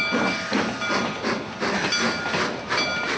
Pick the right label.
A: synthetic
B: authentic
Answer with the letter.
B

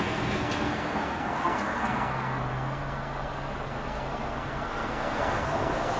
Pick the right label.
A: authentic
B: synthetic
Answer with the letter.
B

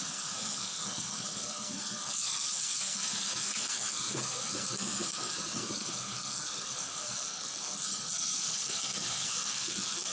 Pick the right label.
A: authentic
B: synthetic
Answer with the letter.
B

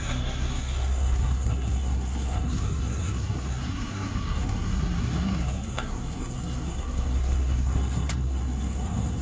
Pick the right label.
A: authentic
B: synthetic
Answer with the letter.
B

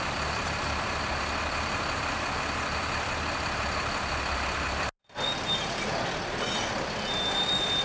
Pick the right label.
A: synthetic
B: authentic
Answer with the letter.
B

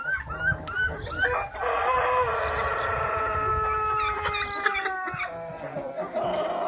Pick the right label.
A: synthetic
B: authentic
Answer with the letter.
B